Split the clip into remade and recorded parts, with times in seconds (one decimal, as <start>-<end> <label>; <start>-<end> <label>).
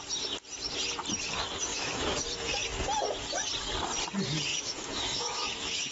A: 0.0-1.7 recorded; 1.7-2.2 remade; 2.2-4.5 recorded; 4.5-5.9 remade